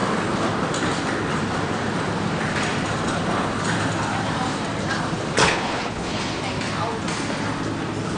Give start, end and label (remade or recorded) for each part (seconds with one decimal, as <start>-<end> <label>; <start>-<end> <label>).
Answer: 0.0-5.4 recorded; 5.4-6.3 remade; 6.3-8.2 recorded